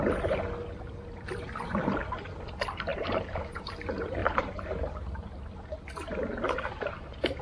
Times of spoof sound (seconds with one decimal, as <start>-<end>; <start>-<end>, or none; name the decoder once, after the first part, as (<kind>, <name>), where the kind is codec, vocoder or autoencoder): 2.9-3.7 (vocoder, BigVGAN v2); 4.2-5.5